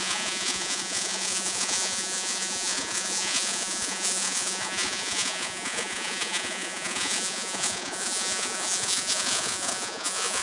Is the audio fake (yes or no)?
yes